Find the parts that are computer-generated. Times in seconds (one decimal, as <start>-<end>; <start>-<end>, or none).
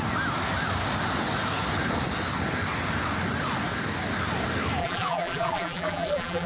4.8-6.5